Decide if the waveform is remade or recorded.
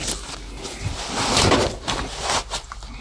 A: recorded